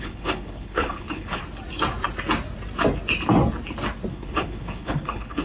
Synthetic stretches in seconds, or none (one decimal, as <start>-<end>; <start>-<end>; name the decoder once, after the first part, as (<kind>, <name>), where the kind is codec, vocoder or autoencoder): 0.0-1.4 (codec, HILCodec); 4.1-5.4